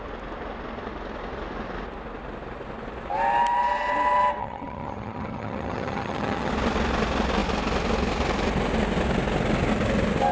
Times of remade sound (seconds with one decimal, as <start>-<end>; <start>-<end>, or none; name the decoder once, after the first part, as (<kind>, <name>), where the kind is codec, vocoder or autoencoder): 4.4-6.5 (vocoder, HiFi-GAN)